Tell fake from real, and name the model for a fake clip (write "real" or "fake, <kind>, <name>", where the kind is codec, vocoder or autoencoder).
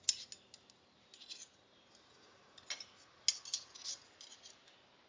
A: real